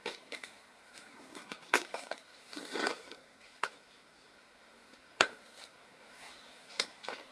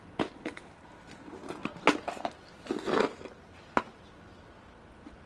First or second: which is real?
second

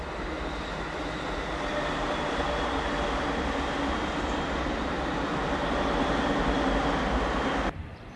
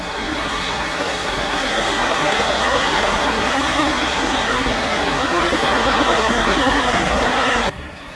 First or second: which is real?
first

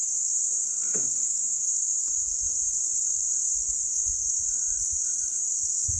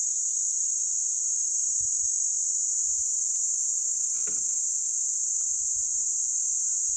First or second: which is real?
second